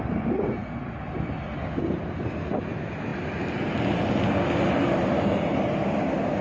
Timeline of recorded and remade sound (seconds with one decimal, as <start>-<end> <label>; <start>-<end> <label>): 0.0-6.4 recorded

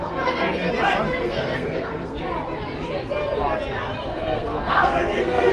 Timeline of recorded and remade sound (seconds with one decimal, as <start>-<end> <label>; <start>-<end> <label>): 0.0-0.7 remade; 0.7-1.1 recorded; 1.1-2.2 remade; 2.2-4.1 recorded; 4.1-5.5 remade

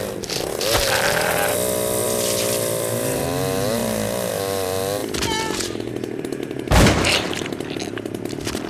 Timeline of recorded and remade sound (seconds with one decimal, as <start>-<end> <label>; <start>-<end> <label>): 0.0-8.7 recorded

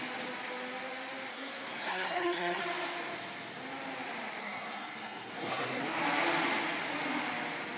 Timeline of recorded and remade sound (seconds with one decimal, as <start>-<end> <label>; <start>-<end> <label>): 0.0-1.3 recorded; 1.3-2.6 remade; 2.6-4.4 recorded; 4.4-5.8 remade; 5.8-7.8 recorded

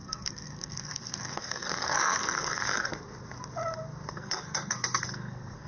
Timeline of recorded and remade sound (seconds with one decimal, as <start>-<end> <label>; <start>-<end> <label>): 0.0-2.9 remade; 2.9-4.1 recorded; 4.1-5.7 remade

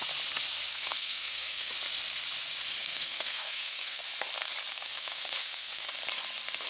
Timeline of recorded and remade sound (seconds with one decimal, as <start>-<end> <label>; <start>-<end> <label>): 0.0-0.7 recorded; 0.7-1.7 remade; 1.7-2.8 recorded; 2.8-4.0 remade; 4.0-4.7 recorded; 4.7-5.9 remade; 5.9-6.7 recorded

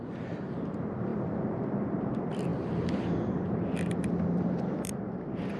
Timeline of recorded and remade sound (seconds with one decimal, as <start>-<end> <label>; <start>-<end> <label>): 0.0-5.6 remade